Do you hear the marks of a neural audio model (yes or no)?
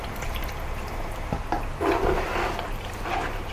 no